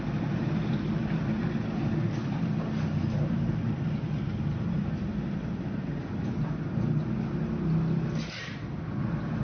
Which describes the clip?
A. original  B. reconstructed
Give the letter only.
A